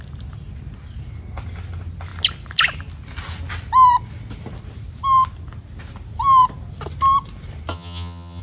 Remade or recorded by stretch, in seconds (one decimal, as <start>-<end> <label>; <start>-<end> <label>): 0.0-7.7 recorded; 7.7-8.4 remade